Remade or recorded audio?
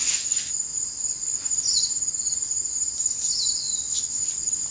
recorded